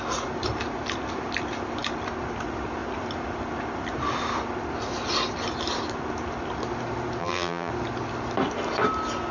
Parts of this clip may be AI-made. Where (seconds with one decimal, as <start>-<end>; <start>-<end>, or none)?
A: 7.2-7.7